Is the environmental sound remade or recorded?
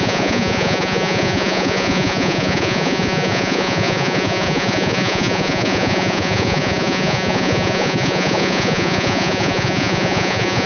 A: remade